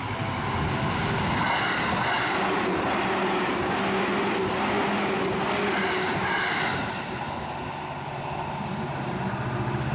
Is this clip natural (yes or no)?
yes